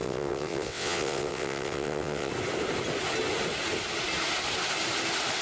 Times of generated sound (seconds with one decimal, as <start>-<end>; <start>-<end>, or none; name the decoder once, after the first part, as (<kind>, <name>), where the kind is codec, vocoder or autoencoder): 0.0-2.3 (vocoder, WaveNeXt)